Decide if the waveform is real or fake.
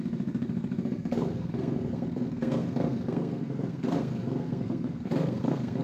fake